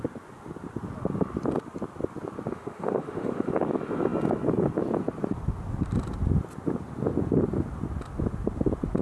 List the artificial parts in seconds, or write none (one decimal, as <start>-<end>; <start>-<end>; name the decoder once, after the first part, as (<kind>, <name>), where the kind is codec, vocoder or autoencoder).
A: 2.5-3.5 (autoencoder, DAC-VAE)